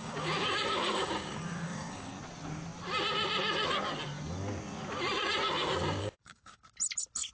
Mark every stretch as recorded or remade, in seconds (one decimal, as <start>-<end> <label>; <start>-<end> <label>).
0.0-2.1 remade; 2.1-6.0 recorded; 6.0-6.6 remade; 6.6-7.3 recorded